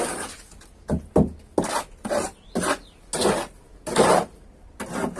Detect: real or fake real